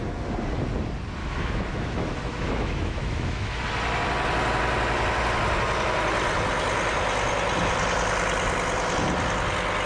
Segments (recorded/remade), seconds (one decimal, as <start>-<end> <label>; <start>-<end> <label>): 0.0-1.2 recorded; 1.2-3.6 remade; 3.6-9.9 recorded